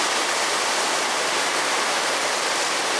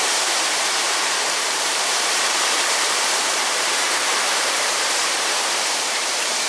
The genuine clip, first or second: first